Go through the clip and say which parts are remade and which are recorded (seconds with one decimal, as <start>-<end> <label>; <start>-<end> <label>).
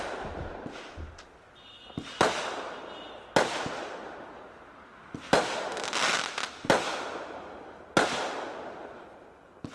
0.0-9.7 recorded